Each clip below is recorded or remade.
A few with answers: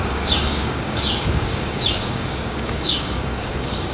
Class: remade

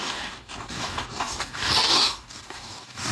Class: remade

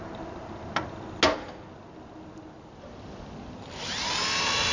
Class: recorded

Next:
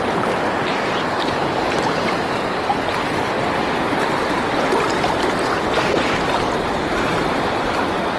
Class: recorded